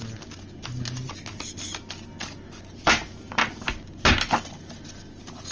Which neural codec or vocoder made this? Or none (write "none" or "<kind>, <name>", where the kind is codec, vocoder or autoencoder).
none